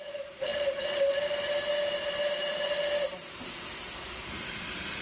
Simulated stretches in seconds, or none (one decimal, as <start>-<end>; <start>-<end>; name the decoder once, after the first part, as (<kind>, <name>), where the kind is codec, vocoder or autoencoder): none